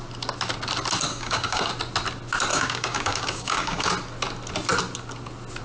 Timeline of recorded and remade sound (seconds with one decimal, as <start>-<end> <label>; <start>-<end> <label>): 0.0-1.1 recorded; 1.1-1.7 remade; 1.7-2.5 recorded; 2.5-3.9 remade; 3.9-5.6 recorded